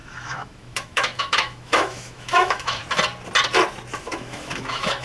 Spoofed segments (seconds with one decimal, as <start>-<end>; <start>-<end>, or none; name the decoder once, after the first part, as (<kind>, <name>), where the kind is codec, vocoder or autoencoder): 0.0-2.8 (autoencoder, DAC-VAE); 4.0-5.0